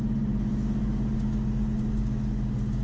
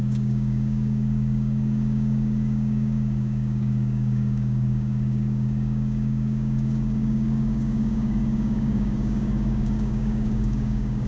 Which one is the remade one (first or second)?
second